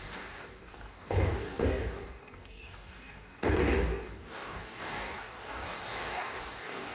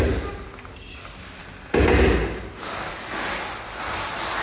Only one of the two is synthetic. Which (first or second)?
first